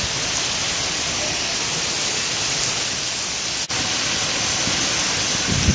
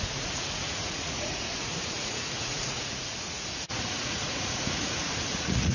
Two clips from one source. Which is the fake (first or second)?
second